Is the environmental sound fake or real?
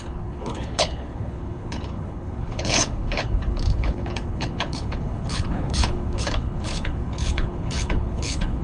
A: fake